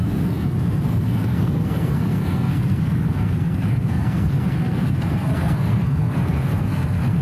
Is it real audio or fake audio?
fake